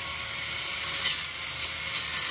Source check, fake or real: real